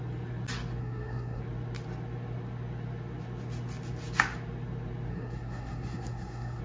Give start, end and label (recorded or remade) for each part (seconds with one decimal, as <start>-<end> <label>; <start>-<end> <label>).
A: 0.0-0.8 recorded; 0.8-1.4 remade; 1.4-5.1 recorded; 5.1-6.6 remade